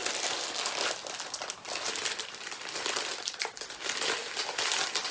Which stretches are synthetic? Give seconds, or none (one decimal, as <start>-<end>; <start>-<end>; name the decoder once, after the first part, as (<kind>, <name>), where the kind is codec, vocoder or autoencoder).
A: 0.0-3.1 (vocoder, BigVGAN v2)